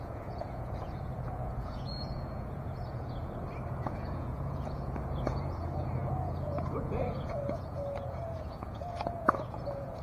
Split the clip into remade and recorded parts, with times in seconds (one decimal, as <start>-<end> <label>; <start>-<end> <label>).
0.0-3.2 remade; 3.2-3.8 recorded; 3.8-10.0 remade